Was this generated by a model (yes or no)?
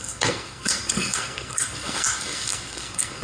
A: yes